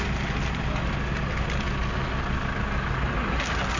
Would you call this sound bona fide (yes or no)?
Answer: yes